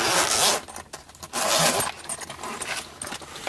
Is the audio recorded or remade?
recorded